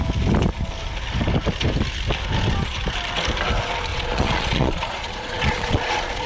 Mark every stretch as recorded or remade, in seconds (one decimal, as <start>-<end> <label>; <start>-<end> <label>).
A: 0.0-3.9 recorded; 3.9-6.3 remade